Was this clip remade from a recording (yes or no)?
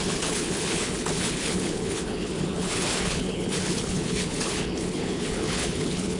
yes